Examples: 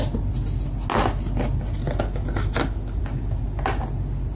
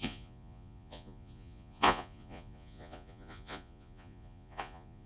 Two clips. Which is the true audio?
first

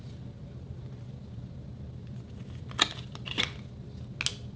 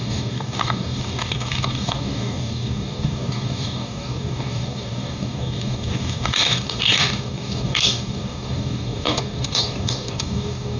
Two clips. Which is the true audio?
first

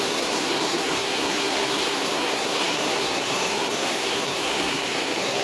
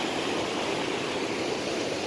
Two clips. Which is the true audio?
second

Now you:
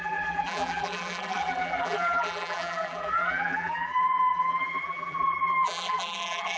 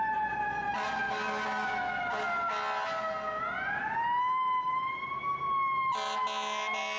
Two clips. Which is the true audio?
second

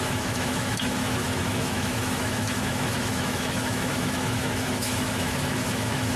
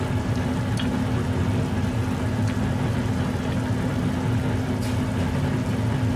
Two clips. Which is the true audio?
second